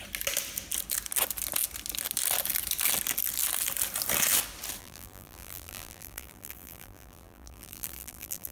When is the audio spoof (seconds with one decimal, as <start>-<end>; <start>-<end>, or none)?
4.8-8.5